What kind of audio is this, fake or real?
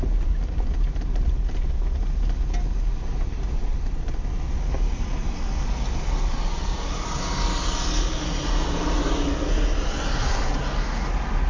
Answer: real